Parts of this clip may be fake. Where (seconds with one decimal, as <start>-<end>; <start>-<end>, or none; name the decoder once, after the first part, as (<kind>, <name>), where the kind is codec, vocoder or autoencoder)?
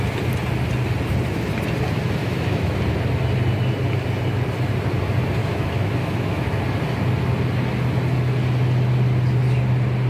2.2-2.8 (autoencoder, DAC-VAE); 5.4-6.6